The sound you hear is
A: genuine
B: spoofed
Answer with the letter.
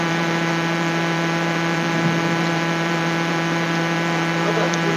B